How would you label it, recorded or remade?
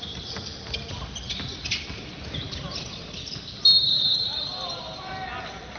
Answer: recorded